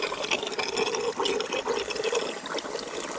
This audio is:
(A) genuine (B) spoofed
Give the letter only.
A